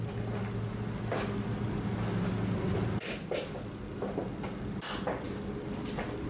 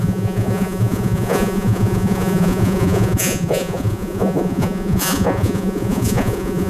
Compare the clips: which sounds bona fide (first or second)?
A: first